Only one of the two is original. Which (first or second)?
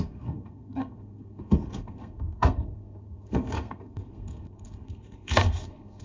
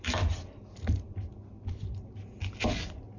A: second